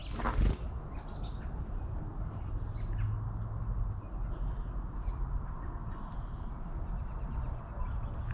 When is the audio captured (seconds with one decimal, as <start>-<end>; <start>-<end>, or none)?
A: 0.0-8.3